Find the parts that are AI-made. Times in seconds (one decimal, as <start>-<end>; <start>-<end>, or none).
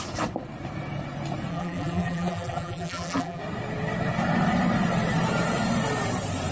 1.5-3.4